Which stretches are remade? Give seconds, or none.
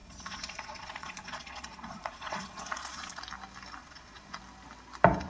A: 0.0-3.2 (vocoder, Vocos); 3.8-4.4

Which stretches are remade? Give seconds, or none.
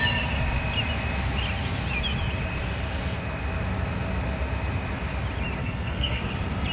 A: 5.6-6.2 (codec, SNAC)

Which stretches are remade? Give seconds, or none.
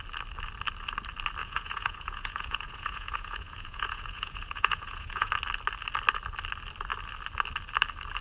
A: 1.4-5.3 (vocoder, Vocos)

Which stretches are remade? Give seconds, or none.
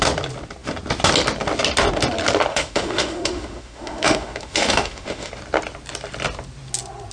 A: 2.5-5.3 (autoencoder, DAC-VAE)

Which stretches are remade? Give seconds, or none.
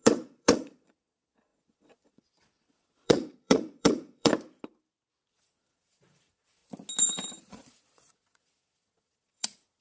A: 0.0-4.3 (vocoder, Vocos); 5.3-6.6; 7.4-9.8